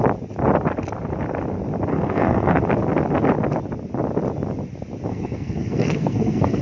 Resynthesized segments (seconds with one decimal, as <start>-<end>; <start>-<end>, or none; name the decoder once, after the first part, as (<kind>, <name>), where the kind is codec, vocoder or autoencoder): 1.9-2.6 (codec, SNAC); 5.1-6.6